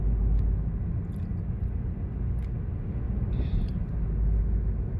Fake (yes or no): no